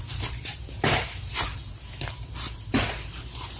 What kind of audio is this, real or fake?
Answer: fake